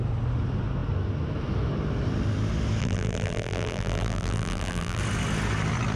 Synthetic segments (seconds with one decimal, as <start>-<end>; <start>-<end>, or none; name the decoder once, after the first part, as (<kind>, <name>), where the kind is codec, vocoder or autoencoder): 2.8-5.0 (vocoder, BigVGAN v2)